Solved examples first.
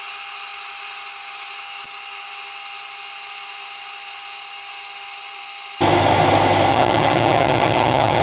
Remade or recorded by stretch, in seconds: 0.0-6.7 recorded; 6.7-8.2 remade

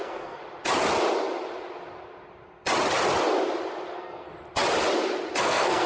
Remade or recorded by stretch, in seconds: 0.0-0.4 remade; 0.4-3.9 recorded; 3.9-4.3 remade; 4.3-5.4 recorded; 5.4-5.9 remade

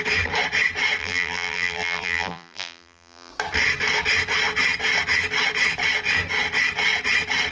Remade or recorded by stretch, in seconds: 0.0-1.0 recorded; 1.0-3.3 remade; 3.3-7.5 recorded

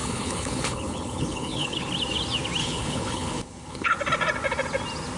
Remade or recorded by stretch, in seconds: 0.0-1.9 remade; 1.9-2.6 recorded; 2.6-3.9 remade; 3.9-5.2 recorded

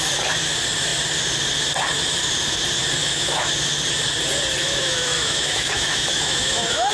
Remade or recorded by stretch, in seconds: 0.0-3.0 recorded; 3.0-3.5 remade; 3.5-4.6 recorded; 4.6-6.9 remade

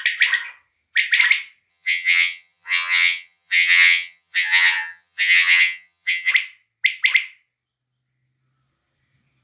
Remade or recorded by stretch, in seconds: 0.0-1.7 recorded; 1.7-6.3 remade; 6.3-9.4 recorded

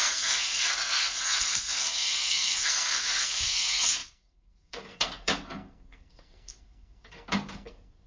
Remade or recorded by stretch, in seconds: 0.0-8.1 remade